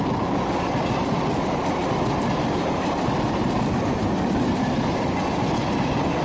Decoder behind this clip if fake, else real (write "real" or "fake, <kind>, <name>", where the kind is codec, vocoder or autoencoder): real